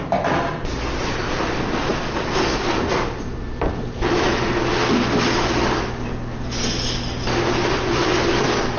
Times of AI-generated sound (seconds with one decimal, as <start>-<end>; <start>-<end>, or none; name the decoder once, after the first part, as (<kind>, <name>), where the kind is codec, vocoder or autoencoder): none